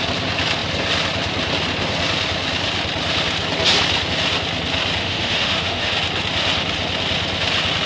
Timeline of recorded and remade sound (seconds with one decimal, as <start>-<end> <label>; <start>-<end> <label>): 0.0-5.0 recorded; 5.0-5.9 remade; 5.9-7.9 recorded